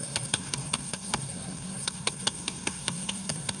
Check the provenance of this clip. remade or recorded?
remade